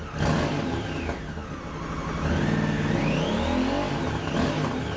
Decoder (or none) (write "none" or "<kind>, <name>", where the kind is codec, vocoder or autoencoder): none